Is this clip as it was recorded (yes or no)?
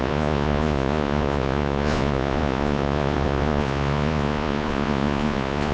no